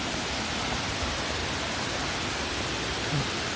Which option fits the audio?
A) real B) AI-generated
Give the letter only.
A